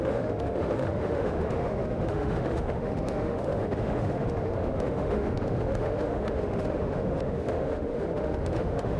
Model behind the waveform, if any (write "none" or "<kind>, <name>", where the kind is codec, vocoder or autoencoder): autoencoder, DAC-VAE